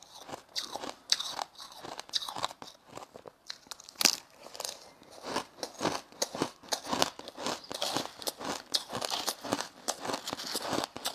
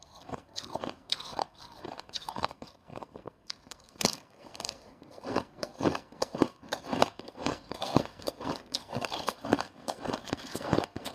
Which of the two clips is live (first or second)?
first